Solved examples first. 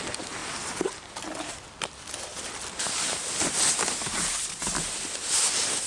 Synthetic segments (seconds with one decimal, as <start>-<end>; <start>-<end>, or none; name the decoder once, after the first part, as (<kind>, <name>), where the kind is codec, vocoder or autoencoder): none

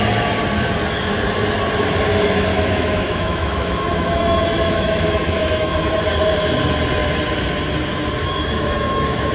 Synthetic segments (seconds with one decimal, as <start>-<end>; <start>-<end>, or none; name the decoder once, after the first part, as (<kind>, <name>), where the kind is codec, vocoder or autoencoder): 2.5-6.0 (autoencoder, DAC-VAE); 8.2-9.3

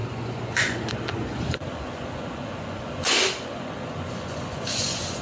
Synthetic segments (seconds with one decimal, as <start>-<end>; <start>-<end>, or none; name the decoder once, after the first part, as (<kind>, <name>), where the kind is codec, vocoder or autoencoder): 0.0-5.2 (vocoder, Vocos)